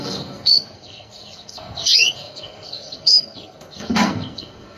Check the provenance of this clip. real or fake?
fake